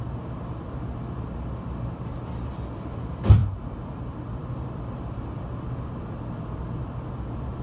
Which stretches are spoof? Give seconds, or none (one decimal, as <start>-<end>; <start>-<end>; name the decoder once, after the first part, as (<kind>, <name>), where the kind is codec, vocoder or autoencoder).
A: 0.0-7.6 (vocoder, BigVGAN v2)

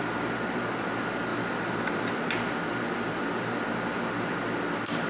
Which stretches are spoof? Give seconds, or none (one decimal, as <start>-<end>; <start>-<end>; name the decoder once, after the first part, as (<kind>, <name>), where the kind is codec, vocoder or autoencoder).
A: 0.0-1.3 (vocoder, BigVGAN v2); 1.8-5.1